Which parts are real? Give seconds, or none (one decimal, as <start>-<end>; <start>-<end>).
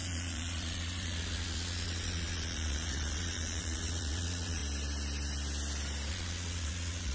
4.6-6.1